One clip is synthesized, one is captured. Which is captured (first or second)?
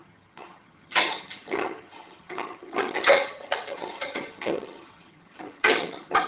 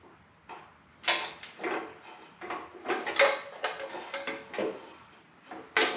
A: second